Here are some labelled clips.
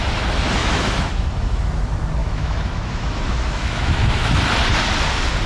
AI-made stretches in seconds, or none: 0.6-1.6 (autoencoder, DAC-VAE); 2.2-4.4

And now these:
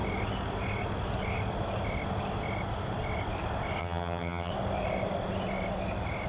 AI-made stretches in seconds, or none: 3.8-4.5 (vocoder, HiFi-GAN)

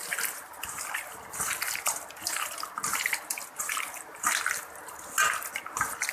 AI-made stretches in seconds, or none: none

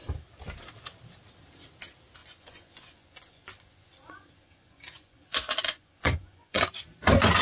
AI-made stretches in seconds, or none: 2.2-6.6 (vocoder, Vocos)

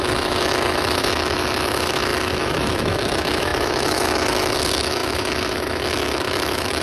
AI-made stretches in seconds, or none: 0.0-6.8 (autoencoder, DAC-VAE)

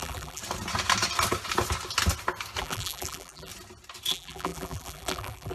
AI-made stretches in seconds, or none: 0.0-0.4 (vocoder, BigVGAN v2); 2.6-3.5; 4.1-5.5

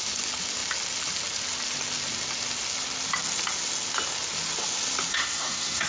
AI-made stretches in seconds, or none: 5.1-5.9 (codec, SNAC)

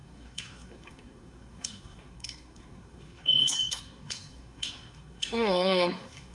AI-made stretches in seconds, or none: 0.0-6.3 (codec, SNAC)